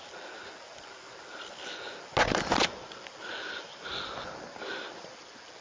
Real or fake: real